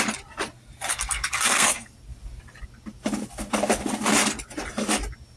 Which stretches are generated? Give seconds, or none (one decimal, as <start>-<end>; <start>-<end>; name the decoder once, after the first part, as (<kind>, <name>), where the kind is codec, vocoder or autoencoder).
0.9-1.9 (codec, SNAC)